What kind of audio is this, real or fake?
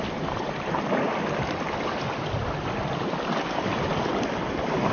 real